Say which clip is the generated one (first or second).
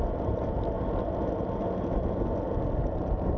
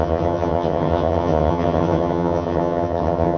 second